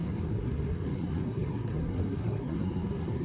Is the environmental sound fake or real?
fake